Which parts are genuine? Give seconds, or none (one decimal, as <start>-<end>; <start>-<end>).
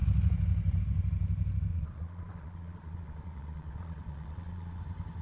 0.0-1.7; 4.8-5.2